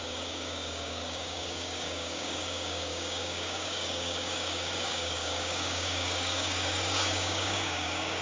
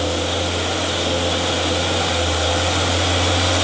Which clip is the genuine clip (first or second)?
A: second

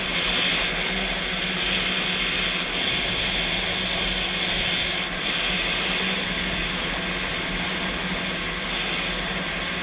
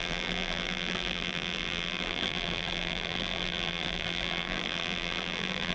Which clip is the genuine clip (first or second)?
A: first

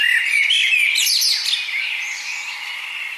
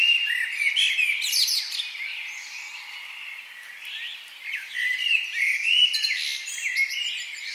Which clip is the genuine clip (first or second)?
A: first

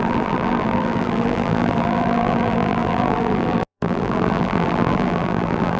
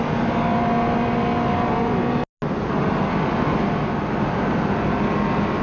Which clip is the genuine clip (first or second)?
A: second